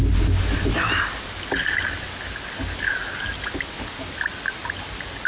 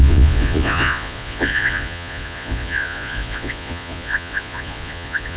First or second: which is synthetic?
second